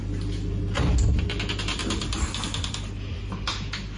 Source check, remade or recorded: recorded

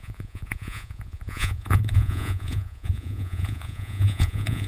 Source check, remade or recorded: remade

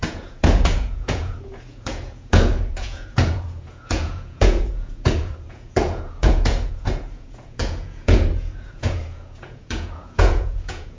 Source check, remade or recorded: remade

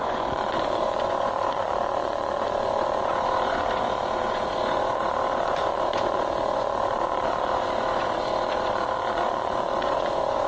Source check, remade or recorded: remade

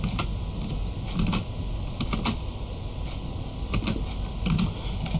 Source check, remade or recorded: recorded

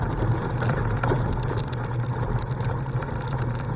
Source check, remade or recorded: recorded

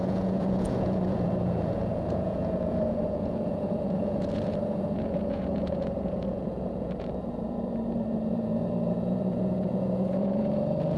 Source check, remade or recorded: remade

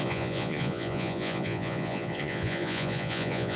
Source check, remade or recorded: remade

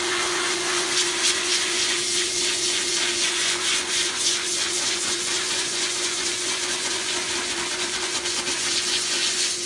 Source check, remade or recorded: remade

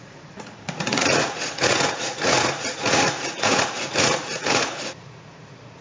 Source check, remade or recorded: remade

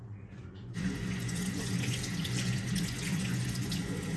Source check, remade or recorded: remade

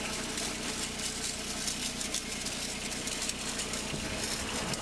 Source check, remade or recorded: recorded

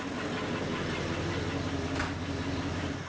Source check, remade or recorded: recorded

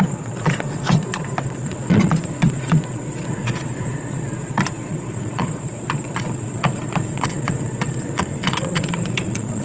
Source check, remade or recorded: remade